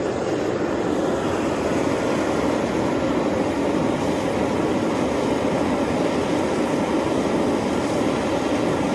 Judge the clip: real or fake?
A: real